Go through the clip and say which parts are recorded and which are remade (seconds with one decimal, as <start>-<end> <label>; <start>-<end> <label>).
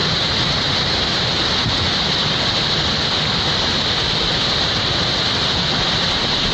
0.0-6.5 recorded